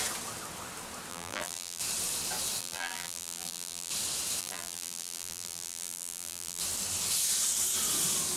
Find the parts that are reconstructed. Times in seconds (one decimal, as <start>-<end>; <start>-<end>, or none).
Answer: 1.1-1.8; 2.6-3.9; 4.4-6.6